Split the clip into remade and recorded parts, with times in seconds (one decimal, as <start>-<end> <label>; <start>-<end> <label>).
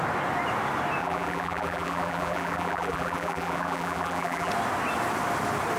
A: 0.0-1.0 recorded; 1.0-4.5 remade; 4.5-5.8 recorded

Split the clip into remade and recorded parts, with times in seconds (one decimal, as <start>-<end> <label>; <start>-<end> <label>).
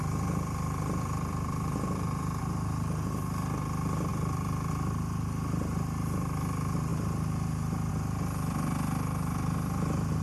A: 0.0-2.4 remade; 2.4-4.1 recorded; 4.1-4.7 remade; 4.7-10.2 recorded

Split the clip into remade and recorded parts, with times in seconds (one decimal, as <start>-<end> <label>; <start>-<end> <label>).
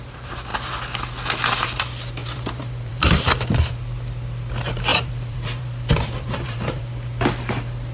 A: 0.0-2.2 recorded; 2.2-3.7 remade; 3.7-4.9 recorded; 4.9-6.8 remade; 6.8-7.9 recorded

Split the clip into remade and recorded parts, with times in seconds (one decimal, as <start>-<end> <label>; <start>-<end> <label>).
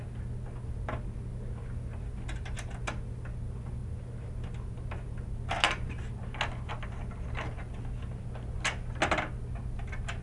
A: 0.0-10.2 recorded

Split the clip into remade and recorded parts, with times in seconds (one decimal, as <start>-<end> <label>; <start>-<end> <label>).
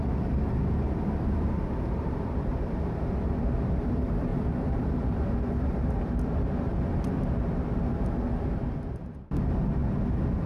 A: 0.0-9.8 remade; 9.8-10.5 recorded